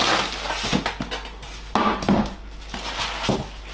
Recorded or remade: recorded